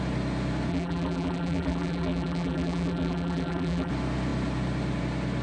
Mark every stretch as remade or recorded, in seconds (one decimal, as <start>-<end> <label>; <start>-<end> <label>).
0.0-0.7 recorded; 0.7-3.9 remade; 3.9-5.4 recorded